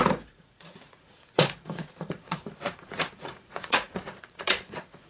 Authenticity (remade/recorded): remade